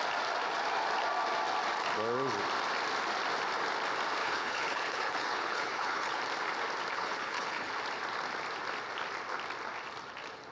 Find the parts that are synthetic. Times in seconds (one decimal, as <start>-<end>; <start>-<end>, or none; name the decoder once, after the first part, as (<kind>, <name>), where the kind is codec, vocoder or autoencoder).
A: 4.2-6.2 (codec, HILCodec); 6.9-7.7